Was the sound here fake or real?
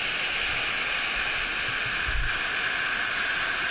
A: real